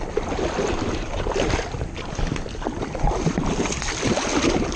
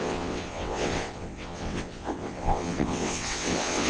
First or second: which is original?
first